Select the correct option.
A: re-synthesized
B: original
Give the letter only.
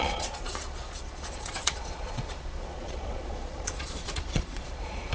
A